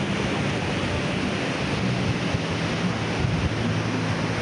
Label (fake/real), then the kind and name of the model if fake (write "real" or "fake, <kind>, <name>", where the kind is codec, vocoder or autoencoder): real